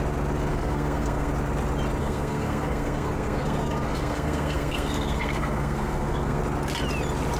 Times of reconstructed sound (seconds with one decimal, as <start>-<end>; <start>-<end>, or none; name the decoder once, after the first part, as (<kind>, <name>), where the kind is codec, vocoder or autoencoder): 0.5-1.3 (codec, SNAC); 2.0-6.4